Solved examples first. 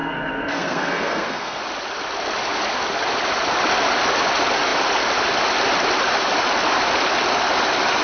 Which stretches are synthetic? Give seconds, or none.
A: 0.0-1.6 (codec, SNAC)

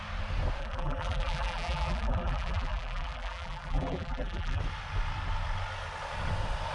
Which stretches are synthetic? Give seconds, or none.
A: 0.6-4.6 (vocoder, BigVGAN v2)

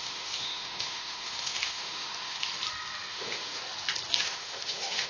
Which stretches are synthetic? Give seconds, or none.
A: 0.0-2.5 (autoencoder, DAC-VAE); 3.1-3.6; 4.2-5.1

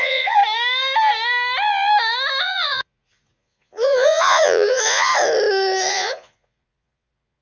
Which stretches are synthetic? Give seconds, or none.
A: 0.0-0.4 (vocoder, Vocos); 2.4-5.1; 5.9-7.4